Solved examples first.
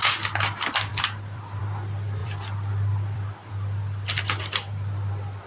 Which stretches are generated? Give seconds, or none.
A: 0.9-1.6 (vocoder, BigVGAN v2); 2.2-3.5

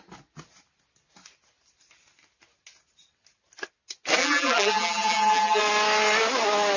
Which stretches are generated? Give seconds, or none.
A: 4.2-5.6 (vocoder, BigVGAN v2)

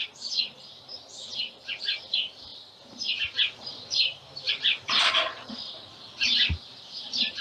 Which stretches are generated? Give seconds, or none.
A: 0.9-7.4 (vocoder, BigVGAN v2)

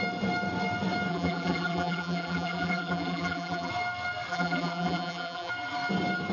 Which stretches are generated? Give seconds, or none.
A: 1.1-3.7 (vocoder, BigVGAN v2); 4.3-5.5

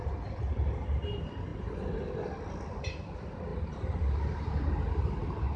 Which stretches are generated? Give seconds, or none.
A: none

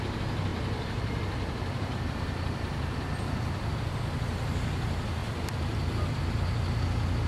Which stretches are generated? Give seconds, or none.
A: 0.5-3.7 (vocoder, BigVGAN v2); 5.2-6.2